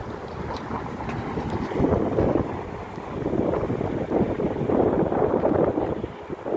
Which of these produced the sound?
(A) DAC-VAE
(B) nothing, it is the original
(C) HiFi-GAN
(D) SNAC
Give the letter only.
B